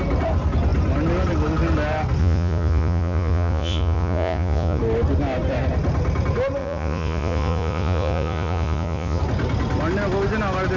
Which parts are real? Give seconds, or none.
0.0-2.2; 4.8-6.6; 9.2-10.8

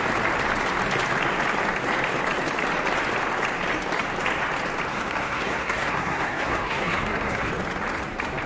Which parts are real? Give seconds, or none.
0.0-4.9; 7.5-8.5

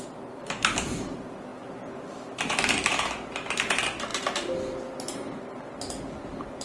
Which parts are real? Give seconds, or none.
0.0-6.6

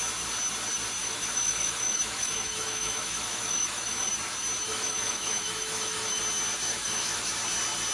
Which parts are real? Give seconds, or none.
0.0-1.0; 4.1-4.7; 6.2-6.7; 7.2-7.9

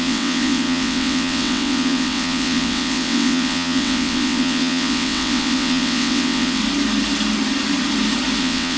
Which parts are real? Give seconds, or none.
6.6-8.4

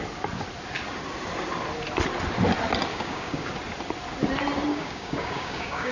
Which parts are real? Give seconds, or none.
0.0-2.9; 3.5-4.7

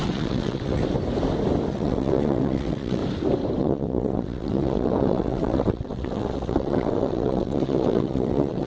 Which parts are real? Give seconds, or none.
0.8-1.7; 3.0-3.6

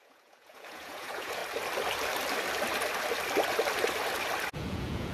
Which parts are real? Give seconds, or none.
1.4-4.5